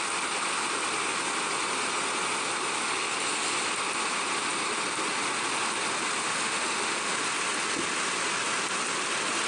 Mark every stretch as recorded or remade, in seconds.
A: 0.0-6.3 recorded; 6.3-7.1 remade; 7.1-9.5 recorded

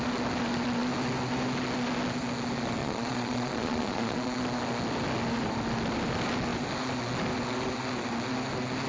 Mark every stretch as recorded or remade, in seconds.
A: 0.0-2.8 recorded; 2.8-4.4 remade; 4.4-8.9 recorded

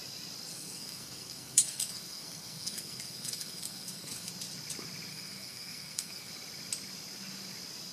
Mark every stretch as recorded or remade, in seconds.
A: 0.0-0.5 recorded; 0.5-4.3 remade; 4.3-5.1 recorded; 5.1-6.3 remade; 6.3-7.9 recorded

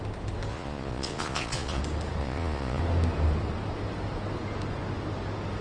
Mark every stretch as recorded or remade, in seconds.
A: 0.0-0.5 recorded; 0.5-1.8 remade; 1.8-2.2 recorded; 2.2-2.8 remade; 2.8-5.6 recorded

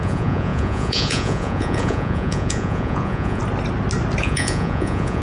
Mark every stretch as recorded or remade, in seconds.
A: 0.0-3.4 remade; 3.4-4.2 recorded; 4.2-5.2 remade